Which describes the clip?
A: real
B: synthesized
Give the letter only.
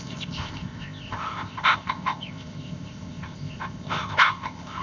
B